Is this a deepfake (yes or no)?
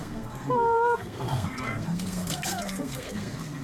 yes